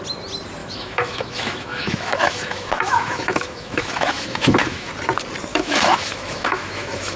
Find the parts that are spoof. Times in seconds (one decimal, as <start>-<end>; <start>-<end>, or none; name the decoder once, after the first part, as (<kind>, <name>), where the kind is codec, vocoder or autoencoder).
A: 0.6-4.9 (autoencoder, DAC-VAE); 5.5-7.2